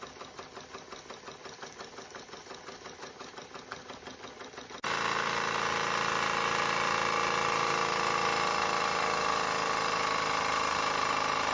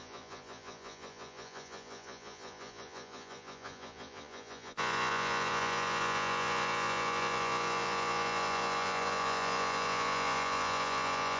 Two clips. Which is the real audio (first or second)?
first